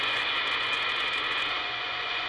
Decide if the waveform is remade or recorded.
remade